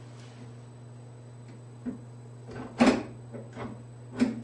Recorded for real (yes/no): yes